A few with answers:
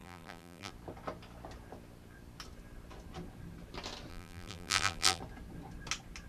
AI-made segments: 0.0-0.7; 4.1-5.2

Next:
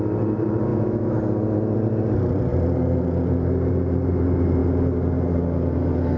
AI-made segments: 0.7-1.2

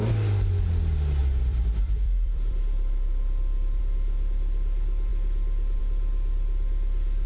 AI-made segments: 1.2-3.8

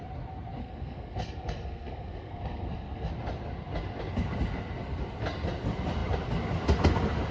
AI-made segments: 0.6-3.1